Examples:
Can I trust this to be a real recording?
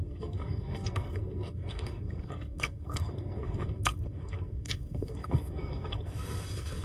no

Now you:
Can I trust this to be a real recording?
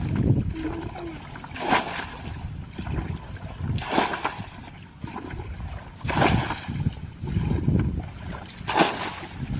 yes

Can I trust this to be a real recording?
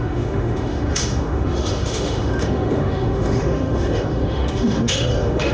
no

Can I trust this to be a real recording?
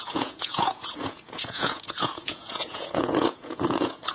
no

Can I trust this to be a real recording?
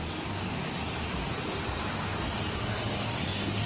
yes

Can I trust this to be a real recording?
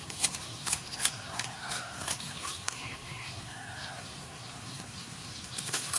no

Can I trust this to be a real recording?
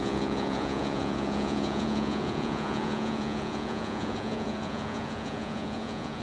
no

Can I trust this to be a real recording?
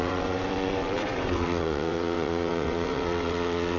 no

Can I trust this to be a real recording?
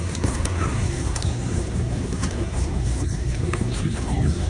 no